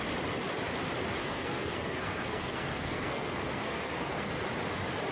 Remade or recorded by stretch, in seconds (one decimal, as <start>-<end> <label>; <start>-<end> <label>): 0.0-1.2 recorded; 1.2-4.3 remade; 4.3-5.1 recorded